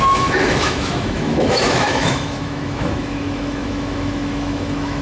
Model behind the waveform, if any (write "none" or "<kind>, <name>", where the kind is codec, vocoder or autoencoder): autoencoder, DAC-VAE